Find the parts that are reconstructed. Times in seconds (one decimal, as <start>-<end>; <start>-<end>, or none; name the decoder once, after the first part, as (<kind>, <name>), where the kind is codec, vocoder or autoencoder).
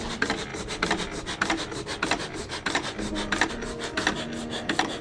none